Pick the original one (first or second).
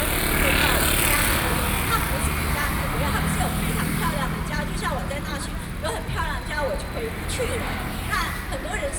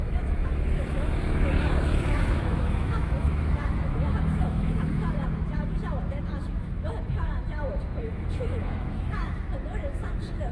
first